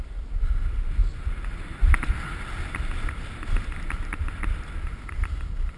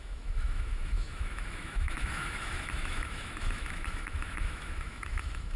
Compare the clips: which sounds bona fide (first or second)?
first